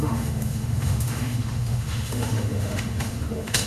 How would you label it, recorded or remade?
remade